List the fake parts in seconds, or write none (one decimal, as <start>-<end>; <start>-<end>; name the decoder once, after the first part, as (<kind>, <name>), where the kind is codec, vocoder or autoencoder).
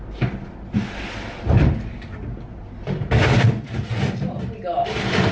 0.0-5.3 (vocoder, BigVGAN v2)